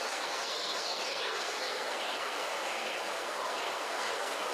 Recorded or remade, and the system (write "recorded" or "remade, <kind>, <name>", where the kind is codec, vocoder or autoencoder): remade, codec, SNAC